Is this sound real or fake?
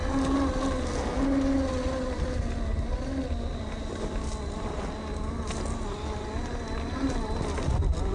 real